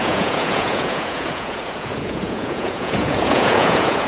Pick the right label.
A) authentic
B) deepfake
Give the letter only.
B